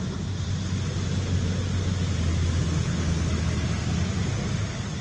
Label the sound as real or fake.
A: real